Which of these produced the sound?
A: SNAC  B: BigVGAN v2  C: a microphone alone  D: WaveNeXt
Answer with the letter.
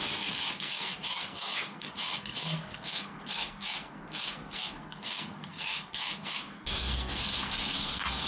A